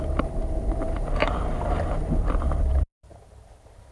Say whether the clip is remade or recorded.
remade